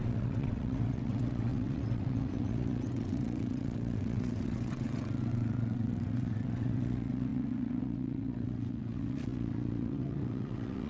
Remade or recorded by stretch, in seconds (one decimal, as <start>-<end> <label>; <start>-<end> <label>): 0.0-10.9 remade